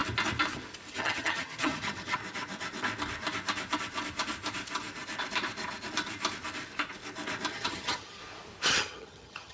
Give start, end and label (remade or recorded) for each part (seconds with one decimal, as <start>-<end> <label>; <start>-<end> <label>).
0.0-0.9 recorded; 0.9-2.2 remade; 2.2-7.5 recorded; 7.5-8.2 remade; 8.2-8.7 recorded; 8.7-9.5 remade